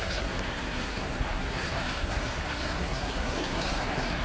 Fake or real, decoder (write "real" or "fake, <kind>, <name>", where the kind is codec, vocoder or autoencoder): fake, codec, SNAC